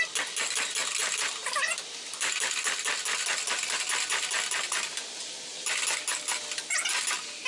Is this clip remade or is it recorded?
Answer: recorded